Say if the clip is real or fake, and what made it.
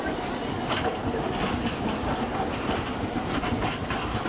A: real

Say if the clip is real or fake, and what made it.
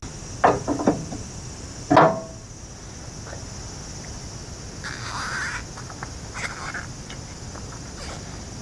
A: real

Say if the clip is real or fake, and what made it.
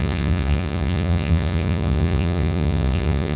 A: fake, vocoder, Vocos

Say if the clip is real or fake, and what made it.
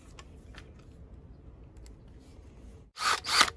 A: real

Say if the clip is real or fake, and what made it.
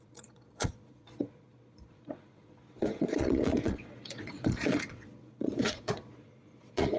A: fake, vocoder, Vocos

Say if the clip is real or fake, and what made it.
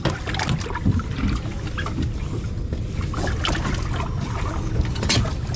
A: real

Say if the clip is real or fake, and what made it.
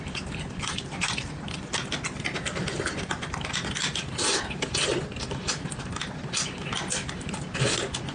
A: real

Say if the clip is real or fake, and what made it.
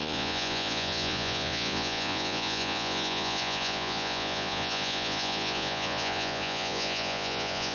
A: fake, vocoder, Vocos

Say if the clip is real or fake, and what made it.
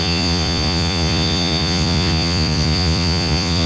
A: fake, vocoder, Vocos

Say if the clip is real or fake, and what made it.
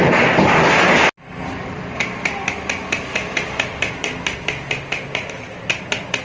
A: real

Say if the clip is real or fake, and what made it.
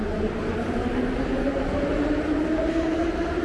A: real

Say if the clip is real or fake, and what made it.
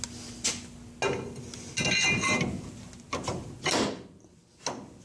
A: real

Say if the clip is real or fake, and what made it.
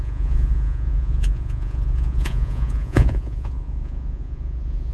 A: fake, vocoder, Vocos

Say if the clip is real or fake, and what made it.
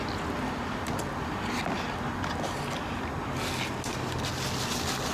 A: real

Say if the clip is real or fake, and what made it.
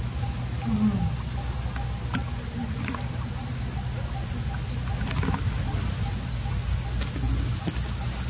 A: real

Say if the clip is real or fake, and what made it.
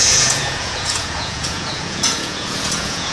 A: fake, vocoder, Vocos